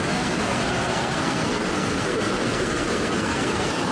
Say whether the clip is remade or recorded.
remade